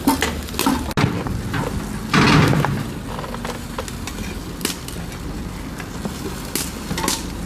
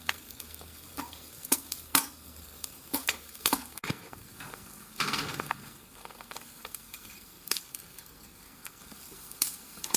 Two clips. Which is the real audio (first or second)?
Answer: first